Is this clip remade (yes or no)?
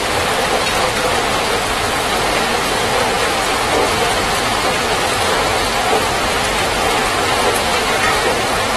no